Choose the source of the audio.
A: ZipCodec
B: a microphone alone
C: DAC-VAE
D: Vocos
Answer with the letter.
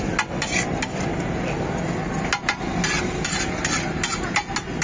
B